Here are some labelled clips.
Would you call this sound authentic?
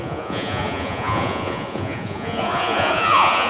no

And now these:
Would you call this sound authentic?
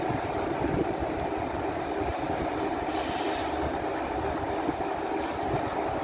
yes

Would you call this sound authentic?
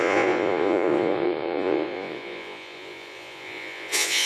no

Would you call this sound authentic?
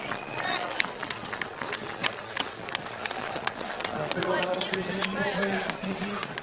no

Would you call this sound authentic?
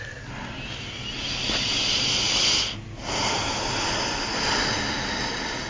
yes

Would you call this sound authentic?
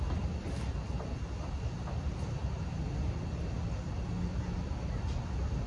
yes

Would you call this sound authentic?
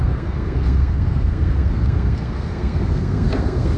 no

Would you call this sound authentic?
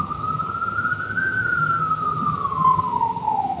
no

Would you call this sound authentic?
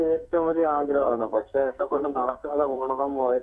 no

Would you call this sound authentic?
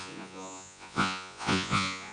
no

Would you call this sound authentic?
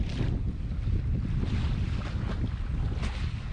yes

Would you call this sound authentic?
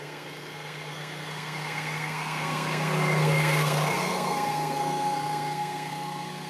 no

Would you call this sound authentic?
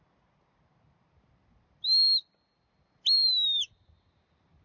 yes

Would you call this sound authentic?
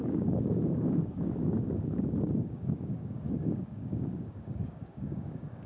no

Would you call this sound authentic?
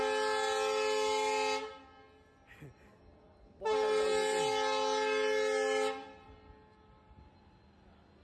yes